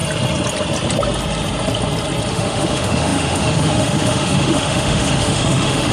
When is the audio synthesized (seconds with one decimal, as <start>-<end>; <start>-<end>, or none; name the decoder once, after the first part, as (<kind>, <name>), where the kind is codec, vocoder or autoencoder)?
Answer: 2.3-5.9 (autoencoder, DAC-VAE)